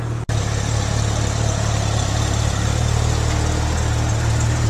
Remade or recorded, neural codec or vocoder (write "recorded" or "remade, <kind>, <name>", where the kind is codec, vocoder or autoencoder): recorded